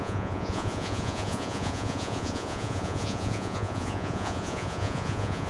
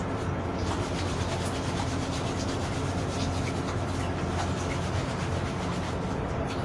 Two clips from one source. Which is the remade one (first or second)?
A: first